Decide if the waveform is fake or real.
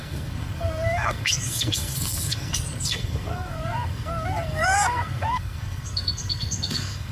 fake